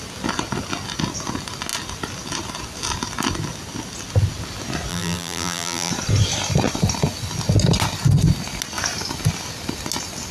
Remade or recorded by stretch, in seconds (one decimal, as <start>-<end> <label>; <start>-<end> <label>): 0.0-4.9 recorded; 4.9-5.9 remade; 5.9-10.3 recorded